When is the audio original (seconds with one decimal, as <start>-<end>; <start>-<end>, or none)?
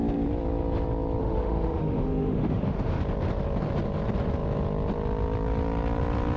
0.0-1.2; 3.0-6.4